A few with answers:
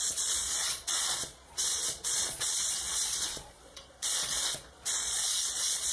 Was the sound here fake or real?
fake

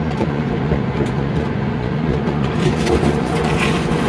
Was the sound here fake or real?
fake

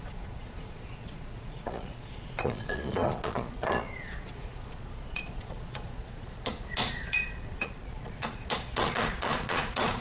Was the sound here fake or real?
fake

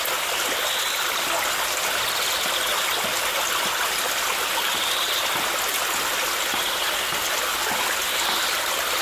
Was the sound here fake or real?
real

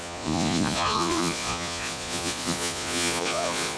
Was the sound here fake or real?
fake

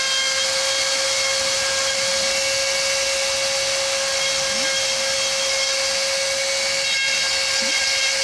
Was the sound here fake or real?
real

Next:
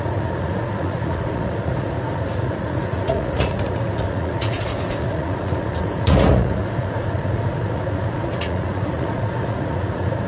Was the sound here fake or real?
fake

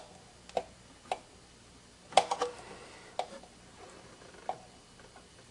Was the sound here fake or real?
real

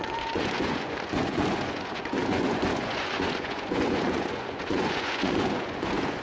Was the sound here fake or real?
fake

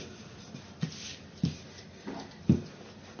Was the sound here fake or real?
real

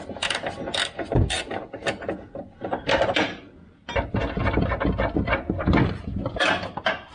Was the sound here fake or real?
real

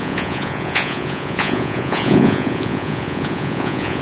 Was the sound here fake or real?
fake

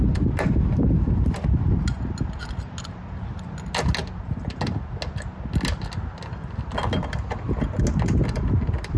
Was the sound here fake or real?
real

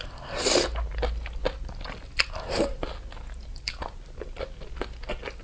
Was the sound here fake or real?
real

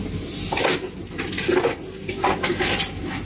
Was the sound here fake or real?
real